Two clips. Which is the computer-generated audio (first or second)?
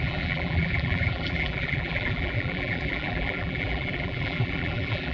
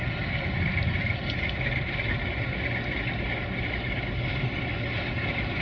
first